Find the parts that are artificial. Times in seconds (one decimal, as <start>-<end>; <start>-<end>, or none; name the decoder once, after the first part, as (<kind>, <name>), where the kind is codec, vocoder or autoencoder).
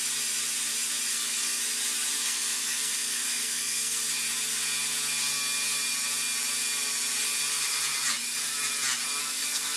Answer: 1.1-1.6 (codec, SNAC); 2.2-4.0; 9.2-9.8